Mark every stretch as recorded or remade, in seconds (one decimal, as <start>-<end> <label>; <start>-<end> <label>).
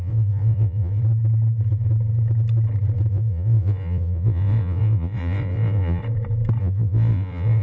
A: 0.0-1.0 remade; 1.0-3.1 recorded; 3.1-6.0 remade; 6.0-6.6 recorded; 6.6-7.6 remade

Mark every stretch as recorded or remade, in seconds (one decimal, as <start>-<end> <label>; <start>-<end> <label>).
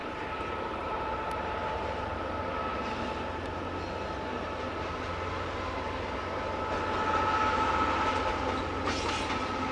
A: 0.0-3.6 remade; 3.6-9.7 recorded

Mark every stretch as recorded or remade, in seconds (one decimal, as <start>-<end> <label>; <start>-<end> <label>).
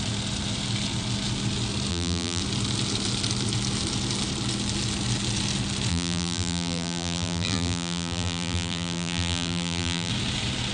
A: 0.0-1.9 recorded; 1.9-2.4 remade; 2.4-5.9 recorded; 5.9-10.1 remade; 10.1-10.7 recorded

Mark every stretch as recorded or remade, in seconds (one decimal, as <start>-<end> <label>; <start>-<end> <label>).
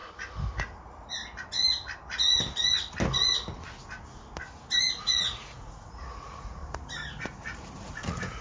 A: 0.0-5.0 recorded; 5.0-6.6 remade; 6.6-7.9 recorded; 7.9-8.4 remade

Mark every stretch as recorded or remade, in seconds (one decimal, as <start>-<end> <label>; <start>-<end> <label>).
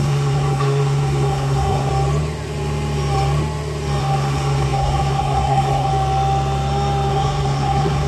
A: 0.0-1.9 remade; 1.9-4.0 recorded; 4.0-5.9 remade; 5.9-7.1 recorded; 7.1-8.1 remade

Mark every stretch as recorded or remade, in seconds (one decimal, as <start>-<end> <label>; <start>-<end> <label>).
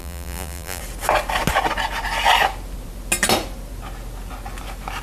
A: 0.0-0.8 remade; 0.8-5.0 recorded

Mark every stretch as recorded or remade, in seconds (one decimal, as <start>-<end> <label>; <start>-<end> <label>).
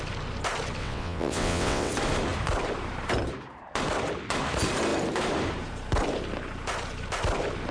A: 0.0-0.8 recorded; 0.8-1.9 remade; 1.9-7.7 recorded